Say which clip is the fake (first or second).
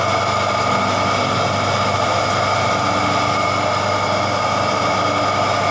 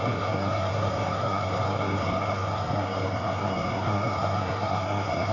second